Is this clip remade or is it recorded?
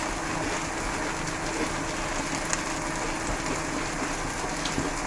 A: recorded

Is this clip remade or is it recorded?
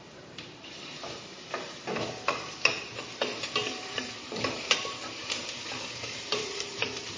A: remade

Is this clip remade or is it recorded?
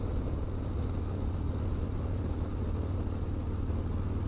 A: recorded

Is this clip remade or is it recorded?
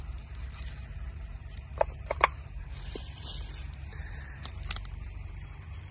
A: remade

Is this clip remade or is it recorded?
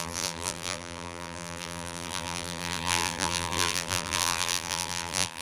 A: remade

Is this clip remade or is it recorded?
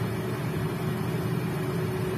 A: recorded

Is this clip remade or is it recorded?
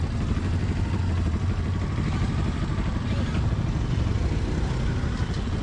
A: recorded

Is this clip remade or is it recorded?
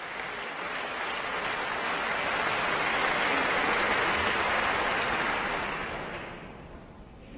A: remade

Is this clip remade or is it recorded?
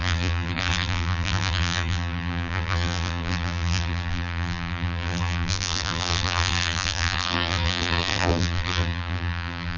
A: remade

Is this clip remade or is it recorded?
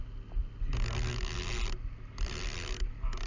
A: recorded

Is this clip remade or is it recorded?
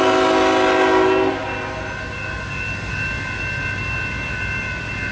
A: recorded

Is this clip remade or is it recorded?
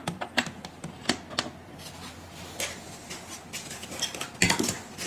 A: recorded